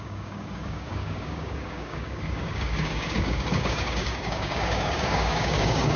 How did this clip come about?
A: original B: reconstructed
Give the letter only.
B